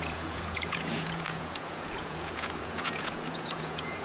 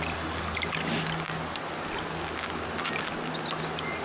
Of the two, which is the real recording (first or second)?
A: second